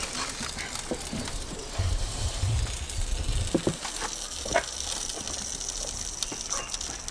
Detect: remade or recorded recorded